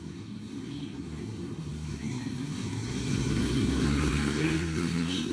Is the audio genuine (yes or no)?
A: no